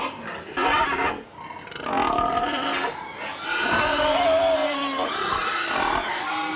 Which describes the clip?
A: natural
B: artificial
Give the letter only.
A